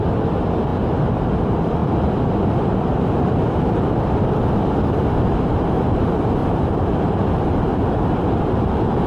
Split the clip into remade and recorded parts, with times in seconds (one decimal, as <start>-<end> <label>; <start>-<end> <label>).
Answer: 0.0-1.8 recorded; 1.8-4.5 remade; 4.5-6.4 recorded; 6.4-7.1 remade; 7.1-9.1 recorded